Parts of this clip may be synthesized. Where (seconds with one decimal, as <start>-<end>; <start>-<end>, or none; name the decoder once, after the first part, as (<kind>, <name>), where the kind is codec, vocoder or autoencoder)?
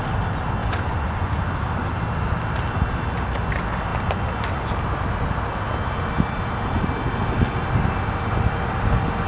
0.6-1.3 (vocoder, Vocos)